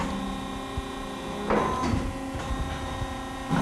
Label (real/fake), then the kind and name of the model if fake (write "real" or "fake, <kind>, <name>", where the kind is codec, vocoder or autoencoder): real